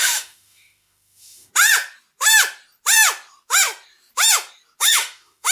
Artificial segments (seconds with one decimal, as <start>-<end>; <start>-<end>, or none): 0.0-1.5; 4.8-5.5